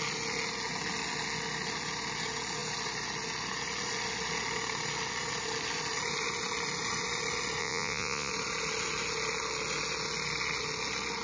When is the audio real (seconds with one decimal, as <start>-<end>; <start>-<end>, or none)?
0.0-7.6; 8.3-11.2